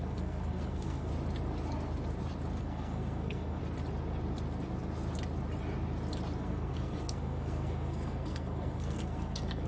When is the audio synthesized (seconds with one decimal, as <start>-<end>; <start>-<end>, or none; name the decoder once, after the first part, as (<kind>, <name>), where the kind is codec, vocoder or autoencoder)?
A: 0.0-1.1 (codec, SNAC); 2.6-3.6; 6.4-9.7